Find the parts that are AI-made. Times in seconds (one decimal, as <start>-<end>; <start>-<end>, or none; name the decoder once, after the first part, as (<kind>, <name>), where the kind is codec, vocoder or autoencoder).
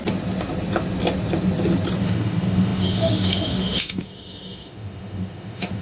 2.0-5.8 (autoencoder, DAC-VAE)